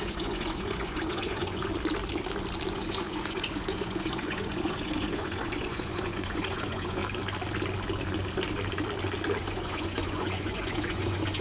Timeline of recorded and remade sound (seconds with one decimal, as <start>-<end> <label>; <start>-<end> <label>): 0.0-1.7 remade; 1.7-2.7 recorded; 2.7-7.0 remade; 7.0-9.4 recorded; 9.4-11.4 remade